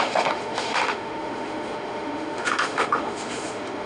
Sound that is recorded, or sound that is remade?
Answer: remade